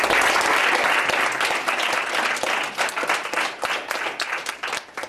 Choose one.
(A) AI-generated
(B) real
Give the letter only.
B